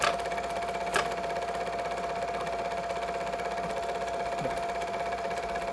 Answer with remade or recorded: recorded